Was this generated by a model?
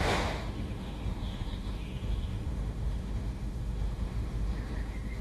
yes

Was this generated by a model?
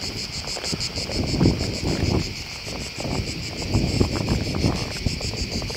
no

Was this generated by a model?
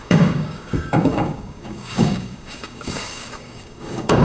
yes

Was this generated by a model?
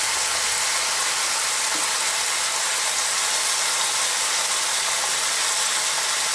no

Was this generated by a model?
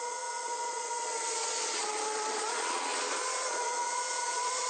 yes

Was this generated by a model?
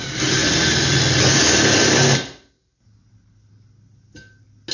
no